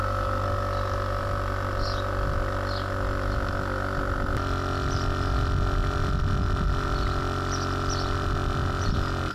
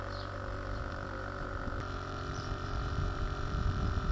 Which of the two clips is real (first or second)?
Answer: first